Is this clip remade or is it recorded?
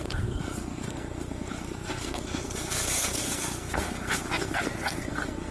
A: remade